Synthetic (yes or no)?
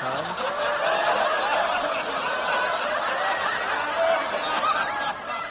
no